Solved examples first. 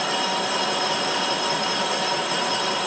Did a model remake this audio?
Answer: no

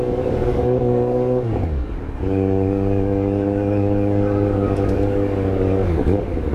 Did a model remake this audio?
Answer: yes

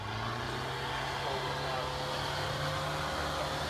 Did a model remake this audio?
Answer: no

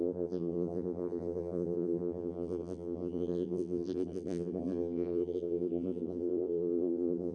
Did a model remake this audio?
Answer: yes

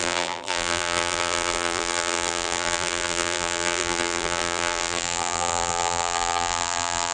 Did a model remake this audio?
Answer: yes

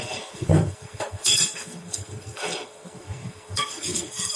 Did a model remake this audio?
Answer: yes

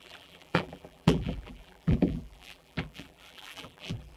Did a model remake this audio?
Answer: yes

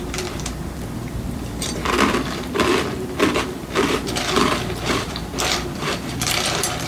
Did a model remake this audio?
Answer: yes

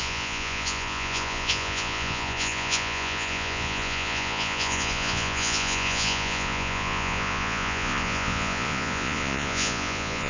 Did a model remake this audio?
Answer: yes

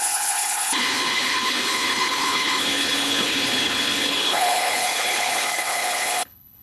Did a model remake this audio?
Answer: yes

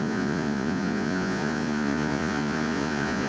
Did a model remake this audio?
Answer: yes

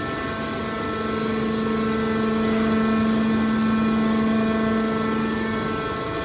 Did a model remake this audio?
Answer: no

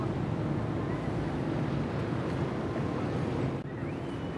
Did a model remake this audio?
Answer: no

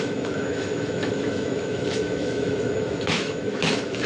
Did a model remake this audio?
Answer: yes